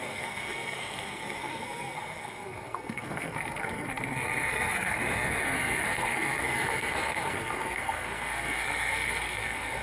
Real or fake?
fake